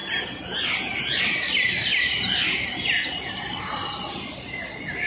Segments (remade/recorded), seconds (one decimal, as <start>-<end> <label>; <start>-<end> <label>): 0.0-5.1 recorded